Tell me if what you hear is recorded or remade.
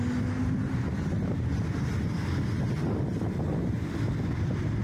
recorded